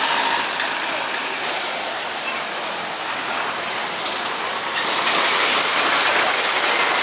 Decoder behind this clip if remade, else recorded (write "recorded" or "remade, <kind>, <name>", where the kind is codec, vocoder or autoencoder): recorded